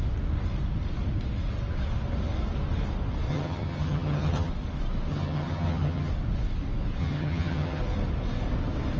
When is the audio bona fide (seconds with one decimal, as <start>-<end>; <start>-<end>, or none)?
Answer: 0.0-3.3; 4.5-5.1; 6.1-7.0; 7.8-9.0